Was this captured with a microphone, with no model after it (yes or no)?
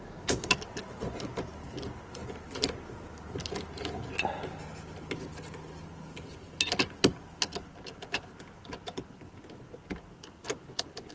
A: yes